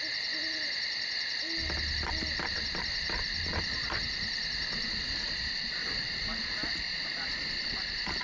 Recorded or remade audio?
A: recorded